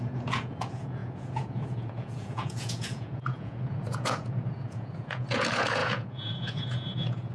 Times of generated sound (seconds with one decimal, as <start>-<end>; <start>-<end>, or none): 0.0-7.3